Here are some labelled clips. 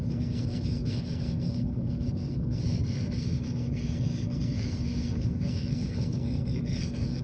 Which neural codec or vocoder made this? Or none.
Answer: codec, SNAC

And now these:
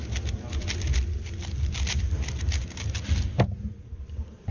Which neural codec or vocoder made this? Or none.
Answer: none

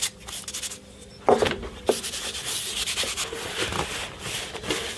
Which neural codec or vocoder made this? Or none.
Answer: none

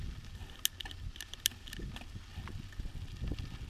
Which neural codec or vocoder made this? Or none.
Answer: none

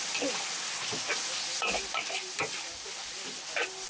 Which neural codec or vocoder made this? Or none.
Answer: none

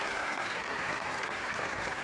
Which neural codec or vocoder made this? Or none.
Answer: codec, SNAC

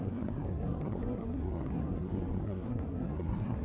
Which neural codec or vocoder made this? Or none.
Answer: codec, SNAC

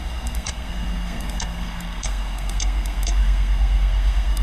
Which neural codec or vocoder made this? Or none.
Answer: codec, SNAC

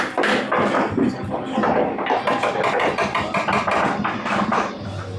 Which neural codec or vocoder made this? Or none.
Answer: none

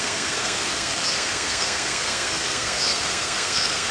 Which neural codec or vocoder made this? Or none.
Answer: codec, SNAC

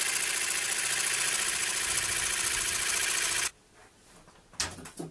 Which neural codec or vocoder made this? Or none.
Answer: none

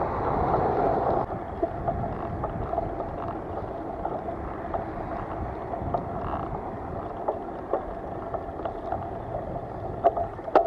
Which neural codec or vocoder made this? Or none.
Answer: none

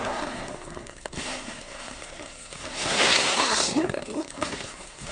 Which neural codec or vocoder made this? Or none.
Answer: codec, SNAC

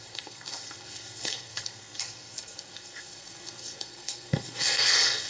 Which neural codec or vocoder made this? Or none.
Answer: codec, SNAC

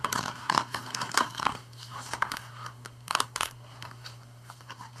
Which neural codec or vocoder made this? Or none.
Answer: codec, SNAC